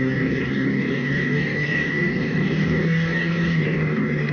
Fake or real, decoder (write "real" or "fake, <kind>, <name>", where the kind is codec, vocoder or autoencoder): fake, codec, DAC